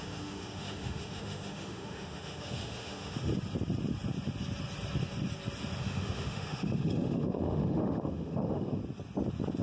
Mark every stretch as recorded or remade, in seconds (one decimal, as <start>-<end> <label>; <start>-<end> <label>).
0.0-3.3 remade; 3.3-5.8 recorded; 5.8-8.8 remade; 8.8-9.6 recorded